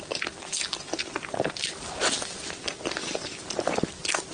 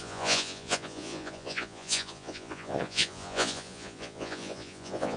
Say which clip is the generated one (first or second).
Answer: second